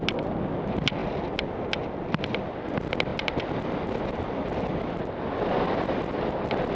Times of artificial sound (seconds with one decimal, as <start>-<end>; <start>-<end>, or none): none